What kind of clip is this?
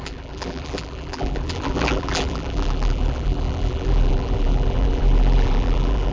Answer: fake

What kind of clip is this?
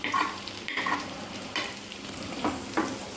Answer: fake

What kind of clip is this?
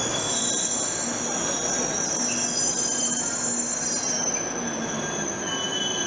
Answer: real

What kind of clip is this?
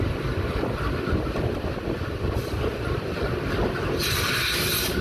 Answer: real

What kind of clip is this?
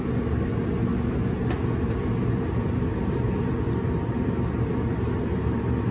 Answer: real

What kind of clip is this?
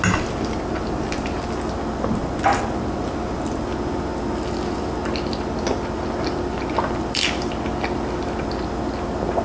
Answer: real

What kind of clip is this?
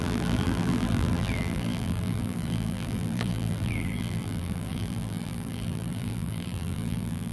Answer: fake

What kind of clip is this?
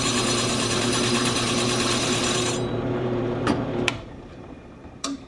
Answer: fake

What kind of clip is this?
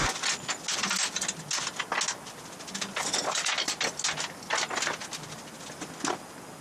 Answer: real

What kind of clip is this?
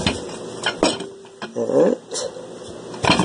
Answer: real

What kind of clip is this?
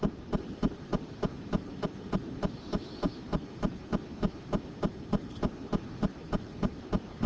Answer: fake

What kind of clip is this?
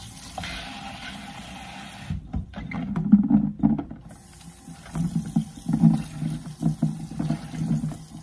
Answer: real